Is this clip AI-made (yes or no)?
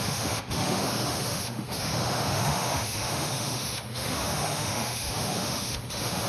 yes